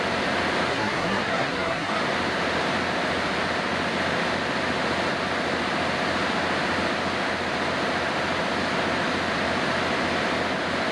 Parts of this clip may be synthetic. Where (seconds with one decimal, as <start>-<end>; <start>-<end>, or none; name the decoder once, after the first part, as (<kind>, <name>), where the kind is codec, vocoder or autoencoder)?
0.7-2.0 (codec, SNAC)